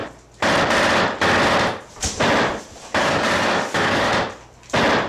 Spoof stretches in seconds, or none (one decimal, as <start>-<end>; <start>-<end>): 3.0-4.1